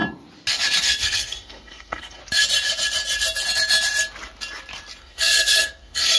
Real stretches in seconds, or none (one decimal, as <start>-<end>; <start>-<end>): 0.0-0.8; 2.2-5.0